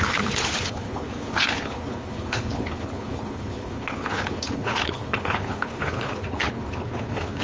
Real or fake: fake